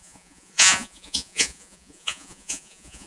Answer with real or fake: fake